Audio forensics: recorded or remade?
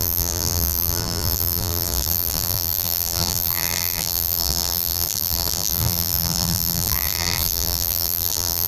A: remade